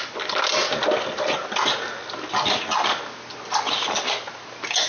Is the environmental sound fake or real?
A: real